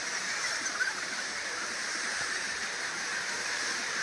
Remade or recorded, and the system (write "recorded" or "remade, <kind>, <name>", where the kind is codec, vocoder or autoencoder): remade, vocoder, BigVGAN v2